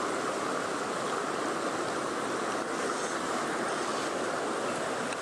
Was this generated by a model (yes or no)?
no